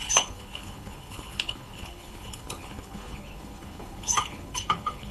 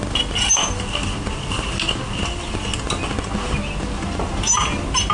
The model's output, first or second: first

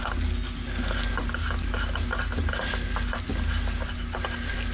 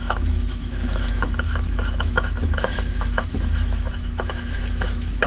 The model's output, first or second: second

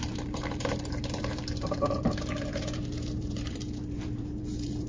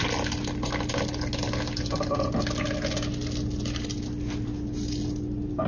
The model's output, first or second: first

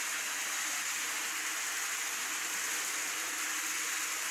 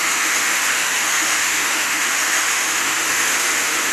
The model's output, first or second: second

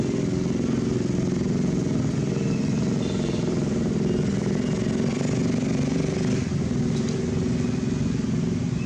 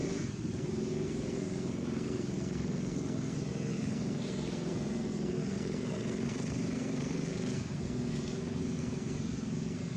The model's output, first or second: second